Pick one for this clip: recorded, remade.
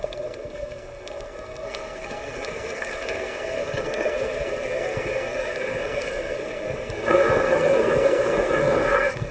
remade